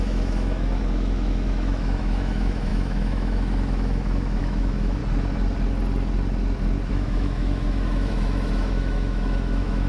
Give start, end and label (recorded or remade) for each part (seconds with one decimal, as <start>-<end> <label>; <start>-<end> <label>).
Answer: 0.0-5.0 remade; 5.0-6.9 recorded; 6.9-9.9 remade